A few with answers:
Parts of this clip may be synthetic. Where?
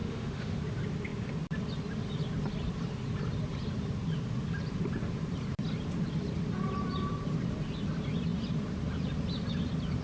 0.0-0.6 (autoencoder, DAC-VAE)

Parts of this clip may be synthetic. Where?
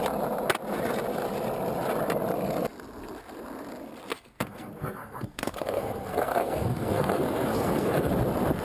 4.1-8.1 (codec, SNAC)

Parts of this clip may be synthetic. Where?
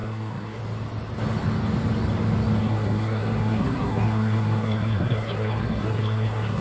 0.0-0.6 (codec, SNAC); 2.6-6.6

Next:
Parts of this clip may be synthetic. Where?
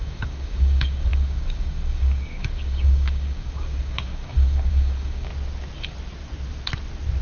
0.0-5.3 (codec, DAC)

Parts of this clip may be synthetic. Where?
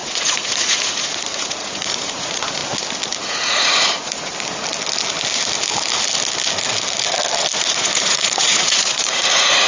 0.0-2.6 (vocoder, Vocos); 3.3-4.3; 7.6-9.7